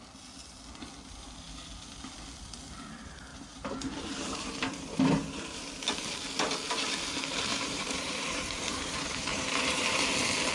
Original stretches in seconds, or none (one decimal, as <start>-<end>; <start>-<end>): 0.0-3.3; 5.7-7.5; 10.0-10.5